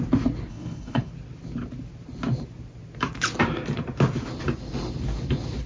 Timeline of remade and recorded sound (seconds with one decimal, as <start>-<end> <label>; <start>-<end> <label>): 0.0-0.5 recorded; 0.5-1.1 remade; 1.1-5.7 recorded